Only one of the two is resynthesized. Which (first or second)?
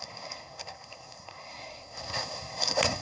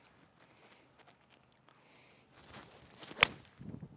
first